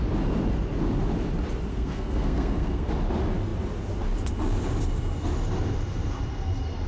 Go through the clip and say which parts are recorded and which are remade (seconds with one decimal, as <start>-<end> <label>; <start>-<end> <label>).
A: 0.0-1.7 recorded; 1.7-2.9 remade; 2.9-6.9 recorded